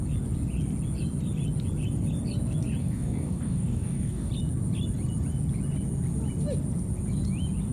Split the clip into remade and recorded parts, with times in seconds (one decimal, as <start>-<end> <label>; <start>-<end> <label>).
0.0-2.8 recorded; 2.8-4.3 remade; 4.3-7.7 recorded